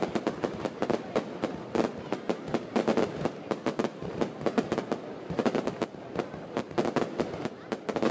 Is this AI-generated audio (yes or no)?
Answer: no